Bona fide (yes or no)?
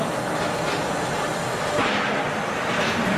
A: yes